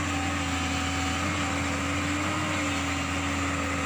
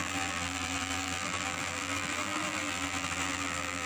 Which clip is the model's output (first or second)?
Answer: second